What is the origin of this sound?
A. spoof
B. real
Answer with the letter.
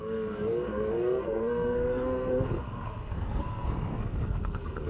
A